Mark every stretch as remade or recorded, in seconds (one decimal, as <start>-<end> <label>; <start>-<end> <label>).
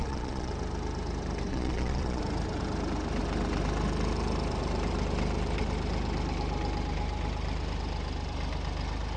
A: 0.0-0.5 remade; 0.5-1.5 recorded; 1.5-2.2 remade; 2.2-9.2 recorded